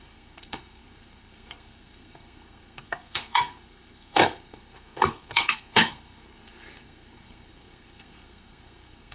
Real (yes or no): no